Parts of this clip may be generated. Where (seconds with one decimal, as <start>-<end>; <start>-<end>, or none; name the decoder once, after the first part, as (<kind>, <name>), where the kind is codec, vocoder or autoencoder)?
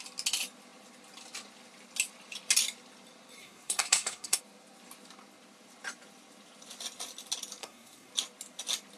3.4-4.4 (codec, SNAC); 7.6-8.1